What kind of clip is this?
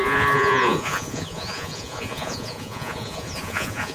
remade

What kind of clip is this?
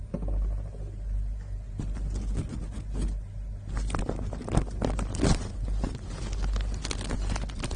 recorded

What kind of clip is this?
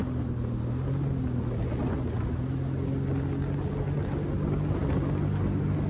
recorded